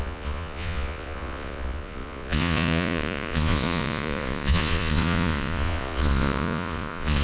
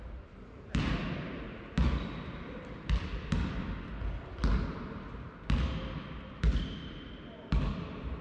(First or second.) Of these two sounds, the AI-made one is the first